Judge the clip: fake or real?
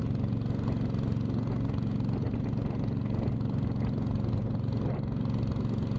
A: real